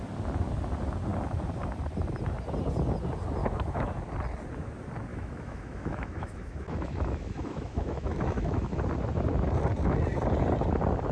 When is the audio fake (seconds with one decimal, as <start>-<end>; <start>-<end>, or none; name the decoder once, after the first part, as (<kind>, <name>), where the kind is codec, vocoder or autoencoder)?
3.4-3.9 (autoencoder, DAC-VAE); 5.1-8.8